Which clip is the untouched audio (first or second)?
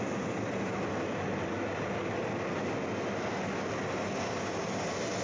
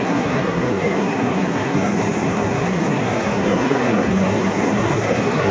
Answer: first